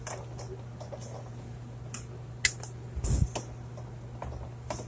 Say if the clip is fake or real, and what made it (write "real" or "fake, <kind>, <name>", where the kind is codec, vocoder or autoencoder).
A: real